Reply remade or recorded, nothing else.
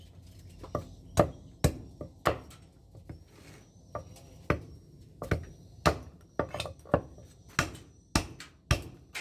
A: recorded